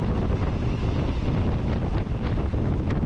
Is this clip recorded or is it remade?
recorded